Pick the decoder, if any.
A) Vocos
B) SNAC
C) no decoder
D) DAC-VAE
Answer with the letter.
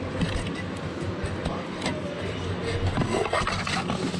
C